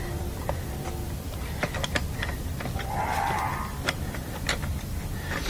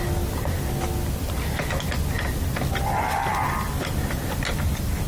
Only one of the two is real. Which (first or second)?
second